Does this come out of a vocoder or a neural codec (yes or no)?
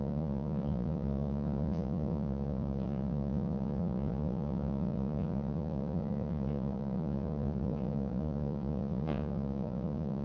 yes